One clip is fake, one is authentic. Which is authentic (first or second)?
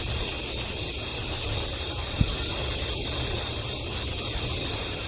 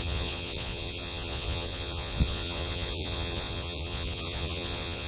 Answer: first